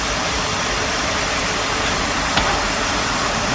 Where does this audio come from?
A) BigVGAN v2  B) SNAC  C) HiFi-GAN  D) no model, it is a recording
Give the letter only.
A